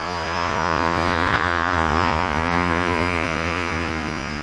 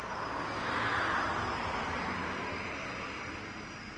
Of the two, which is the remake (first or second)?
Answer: first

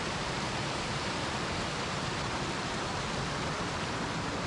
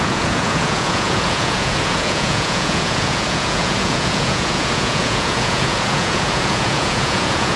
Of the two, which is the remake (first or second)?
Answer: second